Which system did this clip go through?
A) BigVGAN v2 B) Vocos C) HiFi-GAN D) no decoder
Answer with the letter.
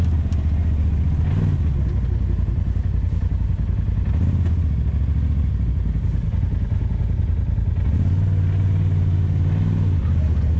D